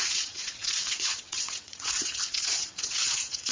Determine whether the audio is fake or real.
fake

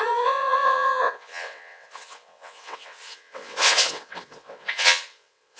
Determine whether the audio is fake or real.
fake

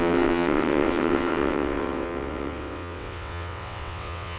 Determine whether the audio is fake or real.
fake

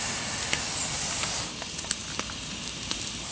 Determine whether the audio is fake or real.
real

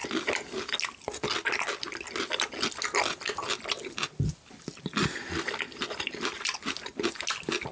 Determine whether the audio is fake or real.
real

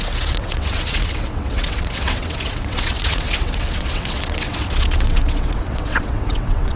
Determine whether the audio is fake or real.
fake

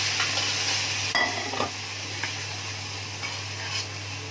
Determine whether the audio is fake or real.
real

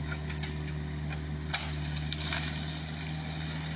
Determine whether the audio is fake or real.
real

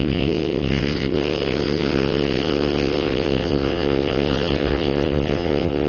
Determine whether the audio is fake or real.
fake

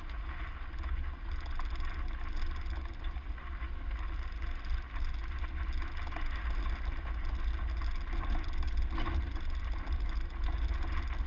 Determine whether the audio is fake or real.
real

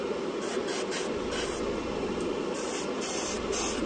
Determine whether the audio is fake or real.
real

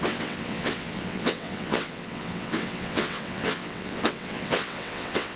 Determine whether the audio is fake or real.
fake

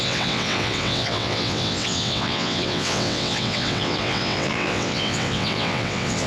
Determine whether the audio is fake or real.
fake